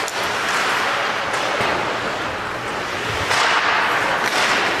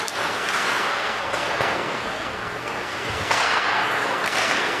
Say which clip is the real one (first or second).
first